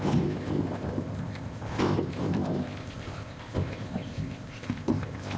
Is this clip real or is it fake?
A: fake